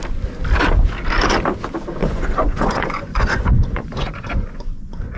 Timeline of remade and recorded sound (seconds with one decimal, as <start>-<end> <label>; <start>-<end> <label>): 0.0-2.0 recorded; 2.0-5.2 remade